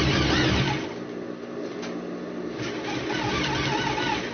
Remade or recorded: recorded